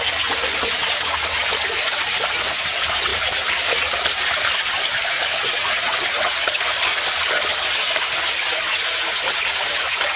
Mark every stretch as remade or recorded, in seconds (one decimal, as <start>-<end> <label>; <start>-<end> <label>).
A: 0.0-3.1 recorded; 3.1-5.7 remade; 5.7-10.2 recorded